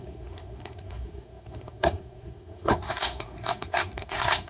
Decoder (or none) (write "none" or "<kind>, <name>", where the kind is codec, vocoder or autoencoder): codec, SNAC